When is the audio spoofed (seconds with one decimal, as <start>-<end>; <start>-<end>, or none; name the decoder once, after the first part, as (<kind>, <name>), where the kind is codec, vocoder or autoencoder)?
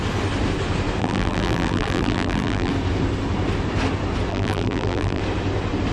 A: 1.0-2.7 (vocoder, BigVGAN v2); 4.3-5.2